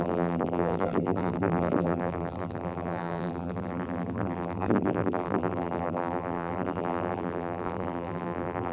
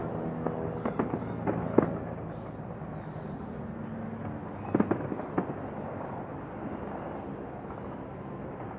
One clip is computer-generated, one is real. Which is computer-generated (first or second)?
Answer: first